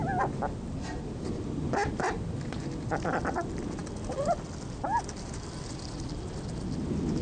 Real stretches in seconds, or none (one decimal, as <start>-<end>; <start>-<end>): 0.0-7.2